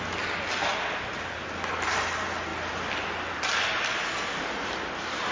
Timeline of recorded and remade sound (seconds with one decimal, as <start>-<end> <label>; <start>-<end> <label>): 0.0-5.3 recorded

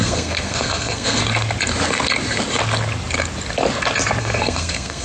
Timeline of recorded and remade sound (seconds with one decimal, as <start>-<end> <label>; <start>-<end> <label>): 0.0-1.2 remade; 1.2-4.2 recorded; 4.2-5.0 remade

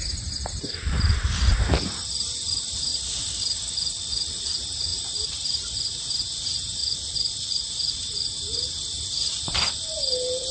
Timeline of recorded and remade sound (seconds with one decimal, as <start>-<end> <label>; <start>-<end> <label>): 0.0-2.9 remade; 2.9-4.4 recorded; 4.4-6.8 remade; 6.8-7.6 recorded; 7.6-10.5 remade